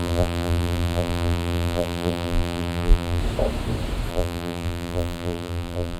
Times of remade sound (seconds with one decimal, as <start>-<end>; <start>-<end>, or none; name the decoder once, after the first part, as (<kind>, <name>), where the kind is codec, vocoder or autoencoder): 0.0-3.2 (vocoder, BigVGAN v2); 4.1-6.0